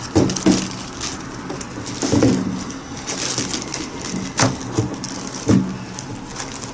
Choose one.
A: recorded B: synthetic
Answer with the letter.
A